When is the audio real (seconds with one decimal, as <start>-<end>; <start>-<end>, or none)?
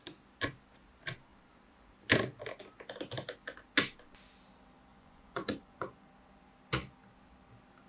0.0-4.9; 6.1-7.9